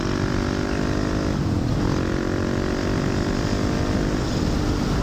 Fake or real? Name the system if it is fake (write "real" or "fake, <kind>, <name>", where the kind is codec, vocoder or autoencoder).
real